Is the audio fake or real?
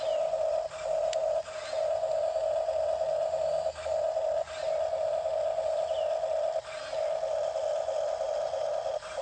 real